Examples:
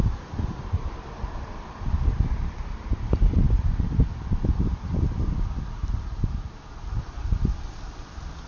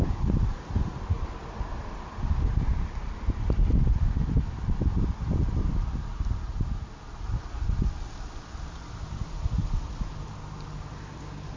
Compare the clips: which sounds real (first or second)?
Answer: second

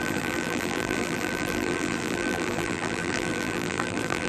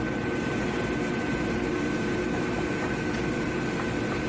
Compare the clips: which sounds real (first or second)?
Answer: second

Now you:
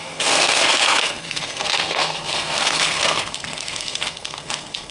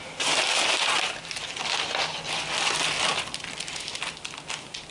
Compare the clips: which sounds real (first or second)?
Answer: second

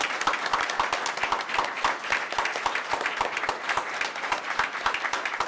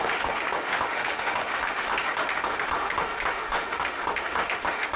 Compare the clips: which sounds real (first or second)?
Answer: first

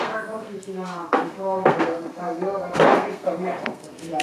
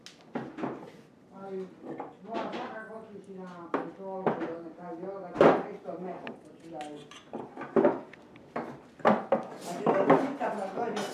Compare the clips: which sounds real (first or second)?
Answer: second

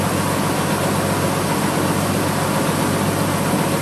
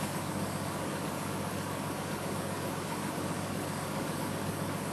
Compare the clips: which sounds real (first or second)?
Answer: first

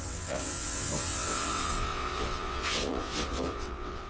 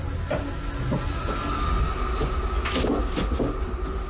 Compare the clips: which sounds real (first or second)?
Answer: second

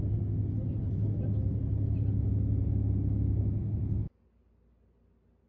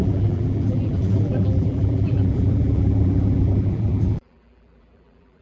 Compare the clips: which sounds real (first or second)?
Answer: first